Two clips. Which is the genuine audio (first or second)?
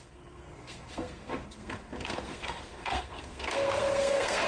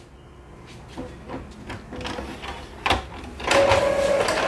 second